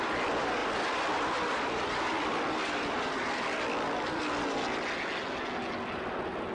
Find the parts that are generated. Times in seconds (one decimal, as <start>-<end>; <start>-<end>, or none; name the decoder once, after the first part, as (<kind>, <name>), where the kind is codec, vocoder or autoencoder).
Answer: 0.6-4.2 (vocoder, BigVGAN v2)